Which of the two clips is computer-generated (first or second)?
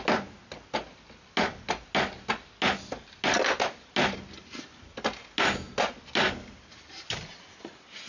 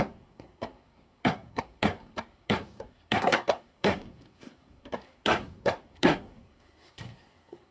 second